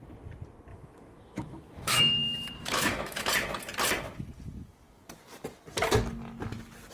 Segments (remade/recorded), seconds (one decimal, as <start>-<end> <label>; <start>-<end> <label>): 0.0-0.7 recorded; 0.7-3.3 remade; 3.3-6.9 recorded